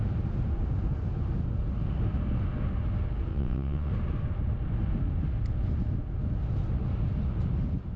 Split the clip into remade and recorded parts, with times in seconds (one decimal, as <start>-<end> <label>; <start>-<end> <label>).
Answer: 0.0-3.3 recorded; 3.3-3.9 remade; 3.9-8.0 recorded